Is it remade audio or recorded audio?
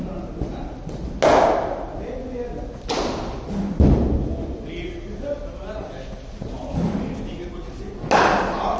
recorded